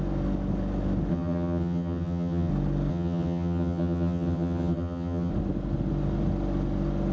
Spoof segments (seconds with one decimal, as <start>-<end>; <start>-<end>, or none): 1.1-2.5; 2.9-5.3